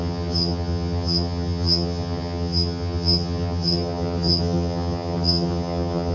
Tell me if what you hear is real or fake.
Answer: fake